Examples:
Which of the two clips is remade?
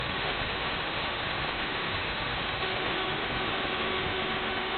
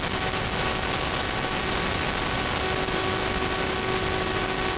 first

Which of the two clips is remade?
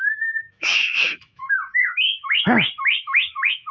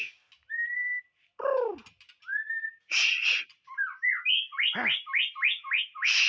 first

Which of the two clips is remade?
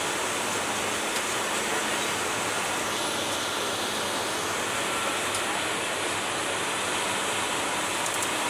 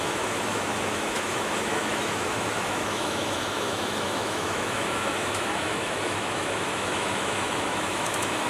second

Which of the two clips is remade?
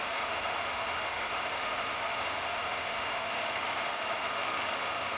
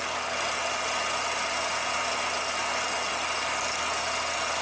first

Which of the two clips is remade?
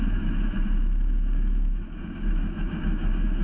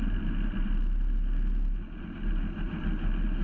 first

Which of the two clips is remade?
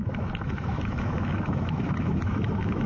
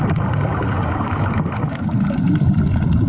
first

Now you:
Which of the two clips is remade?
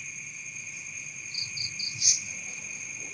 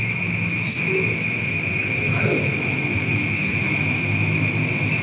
second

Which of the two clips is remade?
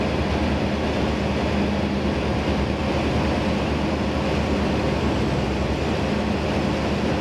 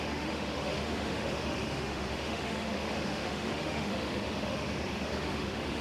second